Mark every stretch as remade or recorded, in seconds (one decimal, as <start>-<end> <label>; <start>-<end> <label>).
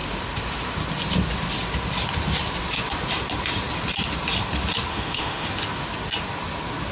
0.0-4.9 recorded; 4.9-5.5 remade; 5.5-6.9 recorded